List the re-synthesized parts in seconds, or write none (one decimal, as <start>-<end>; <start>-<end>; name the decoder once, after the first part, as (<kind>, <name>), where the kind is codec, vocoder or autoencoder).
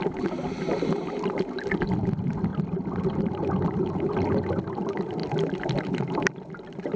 none